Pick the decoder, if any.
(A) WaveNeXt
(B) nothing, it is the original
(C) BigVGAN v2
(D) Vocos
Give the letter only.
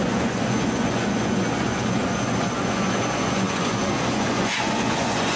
D